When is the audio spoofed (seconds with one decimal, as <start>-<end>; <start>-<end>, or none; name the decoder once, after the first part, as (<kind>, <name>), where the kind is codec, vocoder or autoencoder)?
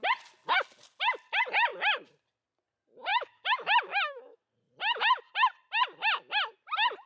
3.1-4.4 (autoencoder, DAC-VAE)